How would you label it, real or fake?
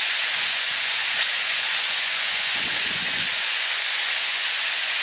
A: fake